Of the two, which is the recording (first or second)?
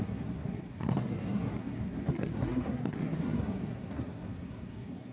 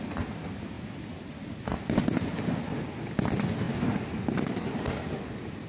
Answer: second